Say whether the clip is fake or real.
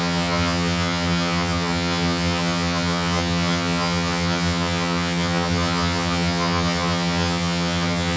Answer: fake